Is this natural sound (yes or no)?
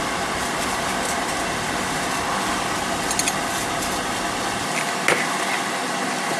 yes